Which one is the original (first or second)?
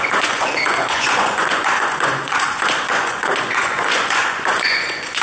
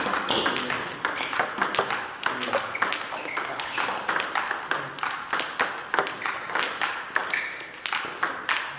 second